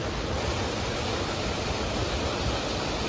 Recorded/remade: recorded